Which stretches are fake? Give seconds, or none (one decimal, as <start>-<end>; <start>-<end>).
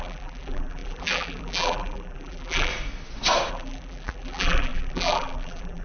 0.0-2.7; 3.5-5.8